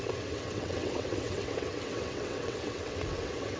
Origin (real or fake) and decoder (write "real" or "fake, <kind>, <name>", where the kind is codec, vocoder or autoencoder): fake, vocoder, WaveNeXt